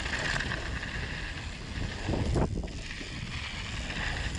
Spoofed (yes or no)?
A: no